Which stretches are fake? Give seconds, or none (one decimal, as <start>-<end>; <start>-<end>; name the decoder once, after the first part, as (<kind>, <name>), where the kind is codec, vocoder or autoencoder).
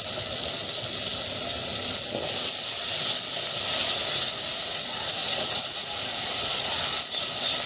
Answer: 3.8-6.8 (vocoder, Vocos)